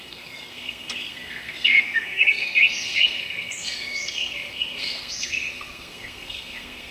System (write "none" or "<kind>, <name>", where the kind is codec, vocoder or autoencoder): codec, SNAC